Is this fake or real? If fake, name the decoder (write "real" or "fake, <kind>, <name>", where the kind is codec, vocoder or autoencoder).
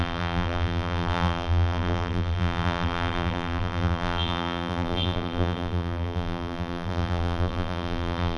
fake, vocoder, BigVGAN v2